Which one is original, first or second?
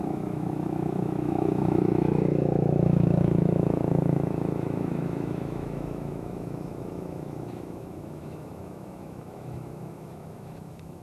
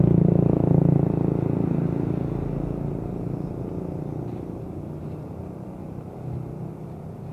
second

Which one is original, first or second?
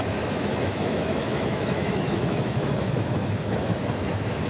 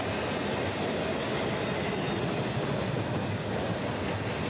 second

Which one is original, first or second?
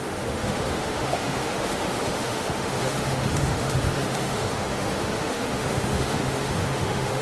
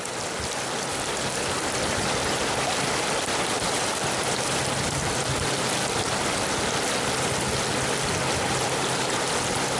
second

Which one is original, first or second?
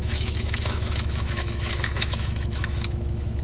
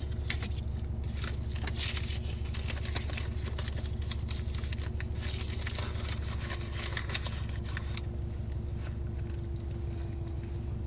second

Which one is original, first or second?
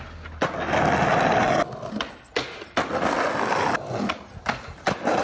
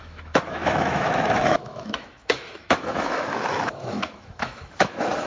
first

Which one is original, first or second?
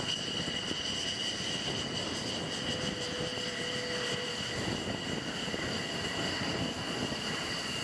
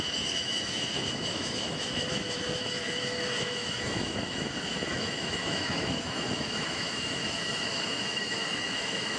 first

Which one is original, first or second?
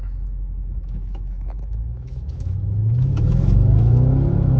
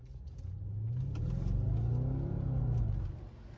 second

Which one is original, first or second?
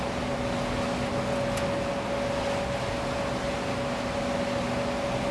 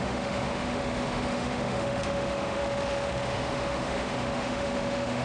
first